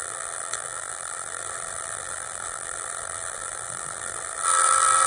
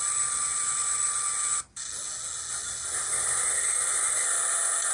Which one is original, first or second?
second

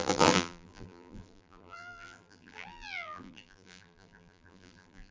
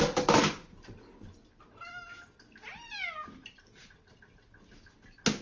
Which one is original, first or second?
second